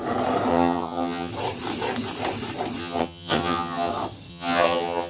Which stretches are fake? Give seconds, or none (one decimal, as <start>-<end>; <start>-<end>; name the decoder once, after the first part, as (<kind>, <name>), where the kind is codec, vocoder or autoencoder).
0.5-1.3 (vocoder, HiFi-GAN); 2.8-3.9; 4.3-5.1

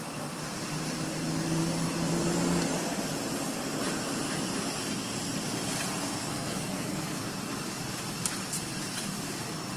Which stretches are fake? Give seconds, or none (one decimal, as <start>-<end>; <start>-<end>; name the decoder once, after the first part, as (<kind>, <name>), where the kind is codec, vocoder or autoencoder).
6.2-7.2 (codec, SNAC)

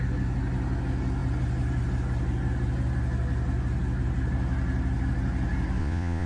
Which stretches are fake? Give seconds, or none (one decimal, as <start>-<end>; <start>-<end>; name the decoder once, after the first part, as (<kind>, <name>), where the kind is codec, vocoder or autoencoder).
5.8-6.3 (vocoder, Vocos)